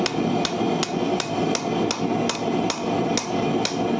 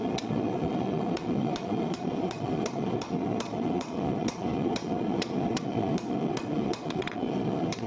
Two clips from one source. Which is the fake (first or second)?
second